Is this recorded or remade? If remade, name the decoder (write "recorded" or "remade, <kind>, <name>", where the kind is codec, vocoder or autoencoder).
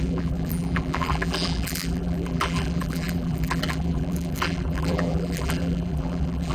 remade, vocoder, BigVGAN v2